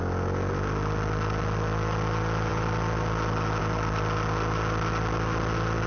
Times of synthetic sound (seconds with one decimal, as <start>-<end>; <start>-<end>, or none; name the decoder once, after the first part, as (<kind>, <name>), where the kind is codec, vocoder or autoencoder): none